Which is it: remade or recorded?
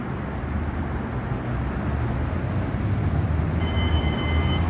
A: recorded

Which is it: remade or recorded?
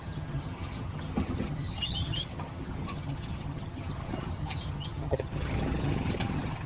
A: remade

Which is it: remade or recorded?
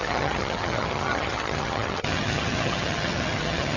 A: remade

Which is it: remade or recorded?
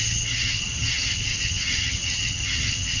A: remade